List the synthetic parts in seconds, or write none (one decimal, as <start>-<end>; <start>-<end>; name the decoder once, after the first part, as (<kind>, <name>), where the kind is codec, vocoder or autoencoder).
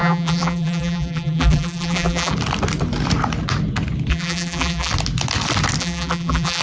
0.0-2.3 (vocoder, BigVGAN v2); 4.1-4.9; 5.8-6.6